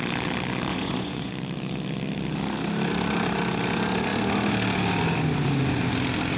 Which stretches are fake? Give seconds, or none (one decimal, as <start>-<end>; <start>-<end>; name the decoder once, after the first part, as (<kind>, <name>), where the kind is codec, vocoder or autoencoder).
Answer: 0.7-1.3 (vocoder, Vocos)